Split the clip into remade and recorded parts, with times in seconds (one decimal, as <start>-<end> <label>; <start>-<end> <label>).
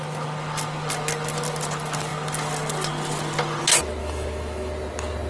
0.0-4.0 recorded; 4.0-4.7 remade; 4.7-5.3 recorded